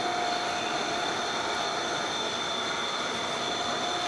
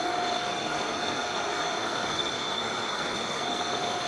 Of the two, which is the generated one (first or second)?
second